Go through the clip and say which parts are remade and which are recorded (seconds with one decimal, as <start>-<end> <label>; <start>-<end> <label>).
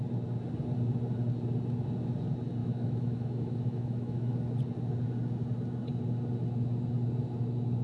0.0-2.6 recorded; 2.6-4.3 remade; 4.3-7.8 recorded